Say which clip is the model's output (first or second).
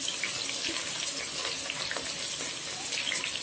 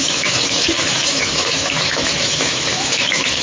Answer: second